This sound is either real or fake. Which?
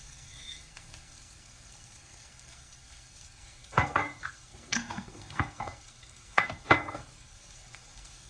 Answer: fake